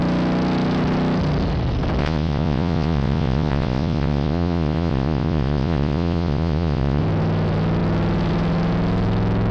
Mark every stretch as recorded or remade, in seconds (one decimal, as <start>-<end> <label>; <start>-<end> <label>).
0.0-2.0 recorded; 2.0-7.0 remade; 7.0-9.5 recorded